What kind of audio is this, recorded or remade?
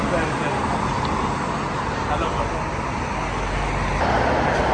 recorded